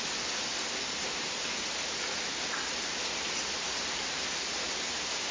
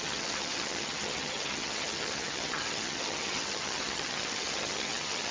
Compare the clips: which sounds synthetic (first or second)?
second